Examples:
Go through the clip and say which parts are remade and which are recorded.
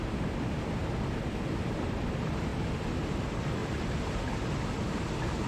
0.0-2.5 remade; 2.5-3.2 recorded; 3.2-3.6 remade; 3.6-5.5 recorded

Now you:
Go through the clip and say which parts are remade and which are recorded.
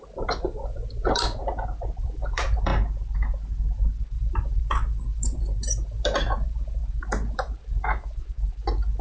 0.0-1.4 remade; 1.4-2.0 recorded; 2.0-2.7 remade; 2.7-4.0 recorded; 4.0-9.0 remade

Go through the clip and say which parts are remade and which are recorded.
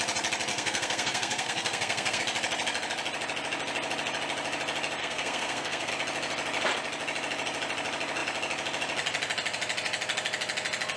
0.0-0.5 recorded; 0.5-2.2 remade; 2.2-5.0 recorded; 5.0-5.9 remade; 5.9-11.0 recorded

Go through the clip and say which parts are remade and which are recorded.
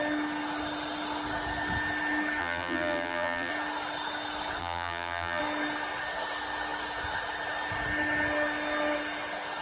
0.0-2.4 recorded; 2.4-3.5 remade; 3.5-4.6 recorded; 4.6-5.4 remade; 5.4-9.6 recorded